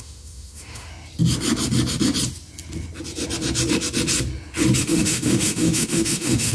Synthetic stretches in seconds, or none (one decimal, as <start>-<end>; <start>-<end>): 0.0-0.9; 4.8-6.5